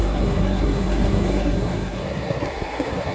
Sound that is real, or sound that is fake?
fake